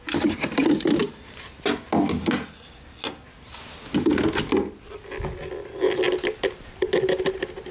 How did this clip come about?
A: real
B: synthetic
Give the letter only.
A